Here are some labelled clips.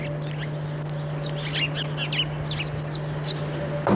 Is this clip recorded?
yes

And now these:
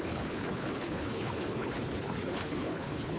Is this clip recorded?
no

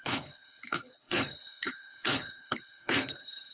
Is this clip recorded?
no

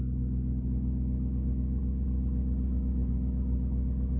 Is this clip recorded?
yes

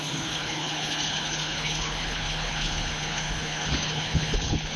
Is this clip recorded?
no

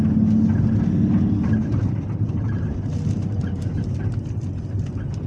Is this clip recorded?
yes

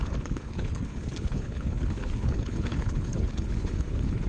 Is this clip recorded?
no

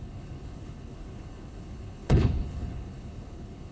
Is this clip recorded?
no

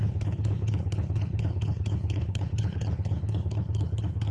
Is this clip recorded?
no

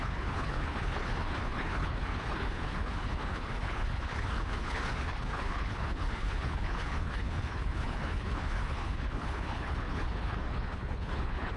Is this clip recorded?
no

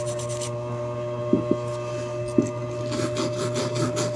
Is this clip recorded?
yes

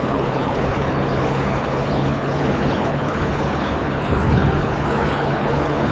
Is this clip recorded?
no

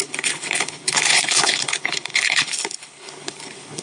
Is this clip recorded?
no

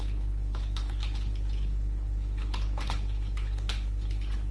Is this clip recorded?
no